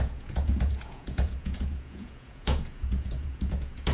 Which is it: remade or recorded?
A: remade